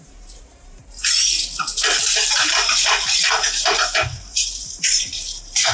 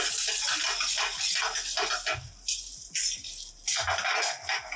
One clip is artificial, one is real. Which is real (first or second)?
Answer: second